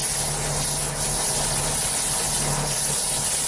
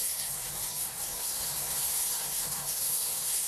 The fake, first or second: second